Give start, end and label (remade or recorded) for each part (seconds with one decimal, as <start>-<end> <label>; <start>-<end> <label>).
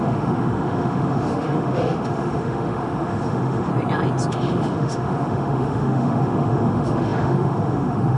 0.0-3.7 remade; 3.7-4.3 recorded; 4.3-8.2 remade